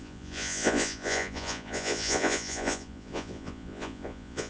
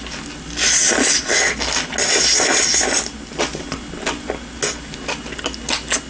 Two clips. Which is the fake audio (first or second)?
first